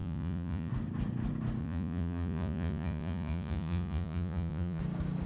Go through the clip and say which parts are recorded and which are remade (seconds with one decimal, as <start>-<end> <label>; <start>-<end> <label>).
0.0-0.7 remade; 0.7-1.6 recorded; 1.6-4.8 remade; 4.8-5.3 recorded